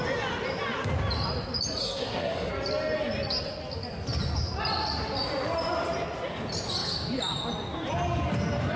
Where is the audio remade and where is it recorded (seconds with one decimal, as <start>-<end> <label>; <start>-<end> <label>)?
0.0-1.8 recorded; 1.8-2.5 remade; 2.5-8.8 recorded